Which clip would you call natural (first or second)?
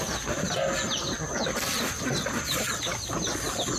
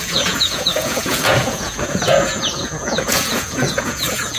first